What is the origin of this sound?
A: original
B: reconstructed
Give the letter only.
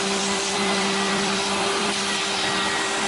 B